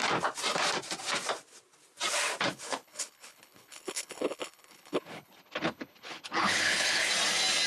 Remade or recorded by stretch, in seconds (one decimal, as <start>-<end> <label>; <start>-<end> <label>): 0.0-2.5 recorded; 2.5-7.1 remade; 7.1-7.7 recorded